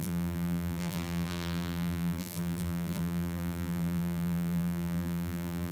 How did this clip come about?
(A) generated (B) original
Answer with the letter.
A